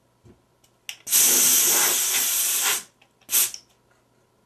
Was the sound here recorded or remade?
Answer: recorded